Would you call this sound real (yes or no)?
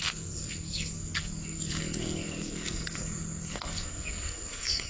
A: no